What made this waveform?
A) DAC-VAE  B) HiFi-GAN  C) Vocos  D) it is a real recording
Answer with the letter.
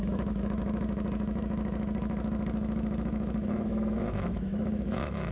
A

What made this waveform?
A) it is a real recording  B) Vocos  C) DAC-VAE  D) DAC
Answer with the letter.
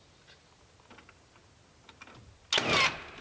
A